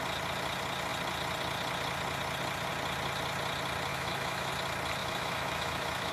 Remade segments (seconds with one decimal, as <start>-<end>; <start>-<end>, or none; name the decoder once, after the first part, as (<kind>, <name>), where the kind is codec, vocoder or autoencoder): 3.9-4.5 (autoencoder, DAC-VAE); 5.0-6.1